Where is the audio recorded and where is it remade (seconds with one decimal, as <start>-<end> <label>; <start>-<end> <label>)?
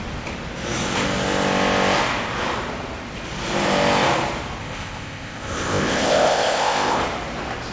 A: 0.0-4.6 recorded; 4.6-7.0 remade; 7.0-7.7 recorded